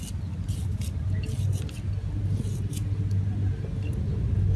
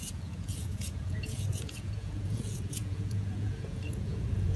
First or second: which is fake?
second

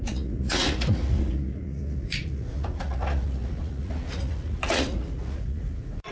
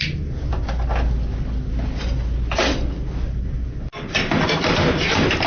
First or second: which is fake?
first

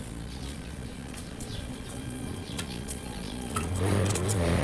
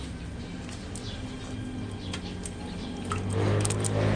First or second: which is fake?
first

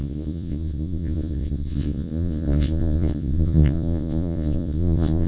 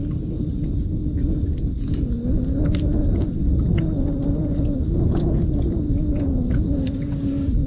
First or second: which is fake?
first